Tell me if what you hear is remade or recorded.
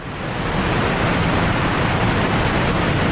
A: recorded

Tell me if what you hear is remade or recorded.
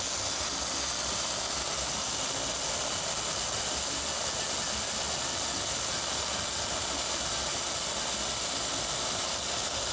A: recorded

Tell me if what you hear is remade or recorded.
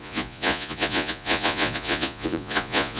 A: remade